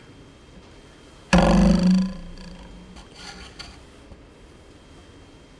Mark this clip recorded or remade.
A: recorded